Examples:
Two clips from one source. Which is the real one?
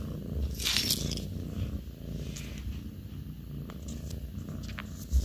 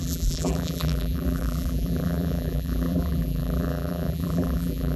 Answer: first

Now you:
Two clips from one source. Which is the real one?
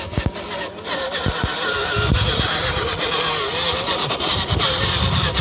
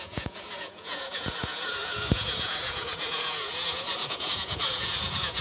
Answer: first